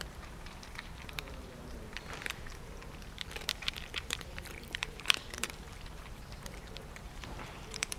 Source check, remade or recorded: remade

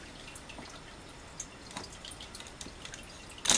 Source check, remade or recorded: recorded